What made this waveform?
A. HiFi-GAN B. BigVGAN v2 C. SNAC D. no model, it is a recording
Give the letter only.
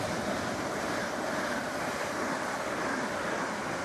B